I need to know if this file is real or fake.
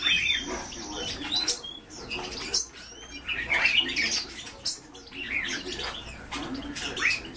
real